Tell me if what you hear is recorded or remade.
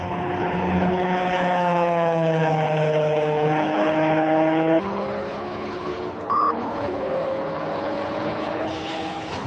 remade